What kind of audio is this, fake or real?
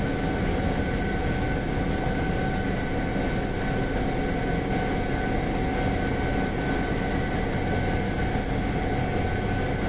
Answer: real